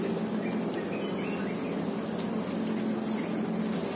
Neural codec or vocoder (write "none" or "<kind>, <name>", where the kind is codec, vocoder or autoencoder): none